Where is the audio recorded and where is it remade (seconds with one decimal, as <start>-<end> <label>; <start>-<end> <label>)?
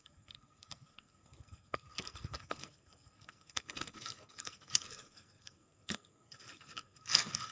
0.0-7.5 remade